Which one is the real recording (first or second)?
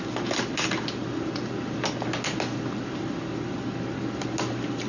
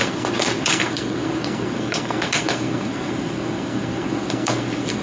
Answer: first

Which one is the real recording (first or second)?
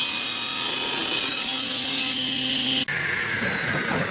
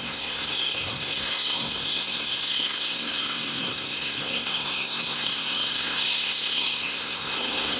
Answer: first